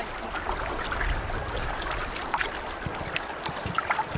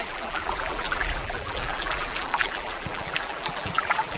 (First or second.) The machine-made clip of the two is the second